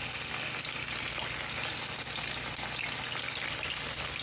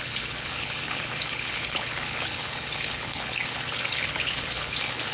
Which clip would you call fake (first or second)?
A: second